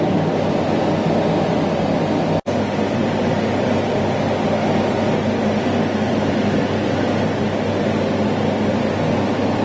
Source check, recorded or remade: recorded